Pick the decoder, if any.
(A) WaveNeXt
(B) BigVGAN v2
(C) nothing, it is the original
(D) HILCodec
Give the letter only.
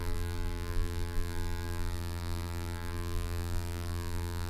B